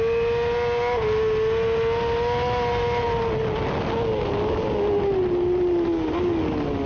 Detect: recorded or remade recorded